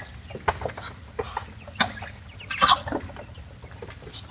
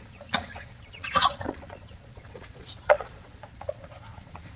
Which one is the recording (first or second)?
first